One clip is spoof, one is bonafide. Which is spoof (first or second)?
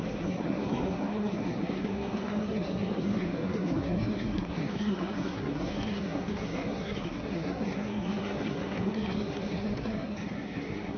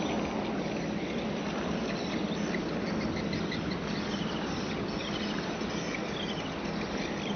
first